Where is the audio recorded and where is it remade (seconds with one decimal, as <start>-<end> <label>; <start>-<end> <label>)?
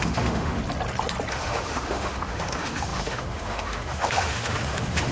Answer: 0.0-0.6 remade; 0.6-1.3 recorded; 1.3-5.1 remade